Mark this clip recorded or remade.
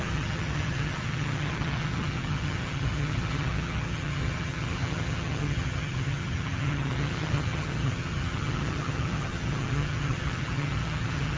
remade